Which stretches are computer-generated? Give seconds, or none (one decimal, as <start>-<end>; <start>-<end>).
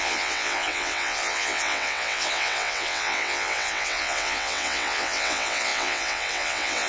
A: 0.0-6.9